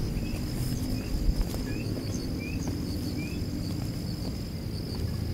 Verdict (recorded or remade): recorded